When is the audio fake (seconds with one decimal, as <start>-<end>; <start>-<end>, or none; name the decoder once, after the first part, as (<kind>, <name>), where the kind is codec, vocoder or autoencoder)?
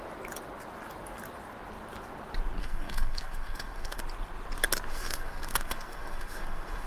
2.6-4.0 (codec, SNAC); 4.9-6.9